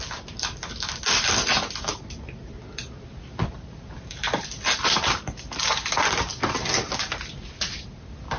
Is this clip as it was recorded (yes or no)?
yes